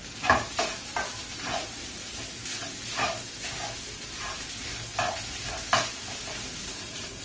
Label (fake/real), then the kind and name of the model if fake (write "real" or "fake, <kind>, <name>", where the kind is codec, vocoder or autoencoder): real